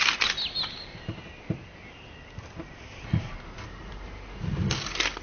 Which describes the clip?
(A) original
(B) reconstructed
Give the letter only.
B